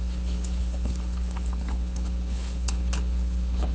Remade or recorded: remade